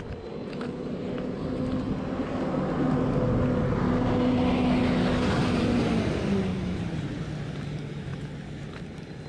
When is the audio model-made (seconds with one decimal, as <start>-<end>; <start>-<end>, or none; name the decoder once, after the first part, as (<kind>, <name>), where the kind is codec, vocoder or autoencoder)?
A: 6.5-7.1 (vocoder, BigVGAN v2)